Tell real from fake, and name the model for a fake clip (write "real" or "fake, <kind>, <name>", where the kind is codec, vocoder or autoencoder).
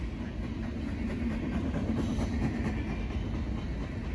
real